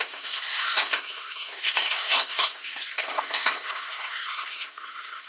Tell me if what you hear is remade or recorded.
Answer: remade